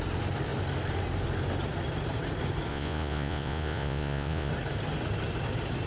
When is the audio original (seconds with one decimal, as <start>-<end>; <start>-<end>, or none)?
0.0-2.7; 4.5-5.9